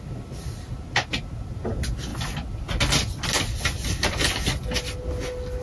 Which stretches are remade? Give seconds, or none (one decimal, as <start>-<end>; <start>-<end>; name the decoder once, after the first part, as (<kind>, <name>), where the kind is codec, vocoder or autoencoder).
none